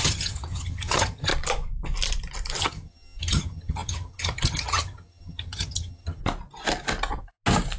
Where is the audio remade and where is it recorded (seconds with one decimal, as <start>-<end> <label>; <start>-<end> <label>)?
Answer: 0.0-1.3 remade; 1.3-2.6 recorded; 2.6-6.2 remade; 6.2-7.8 recorded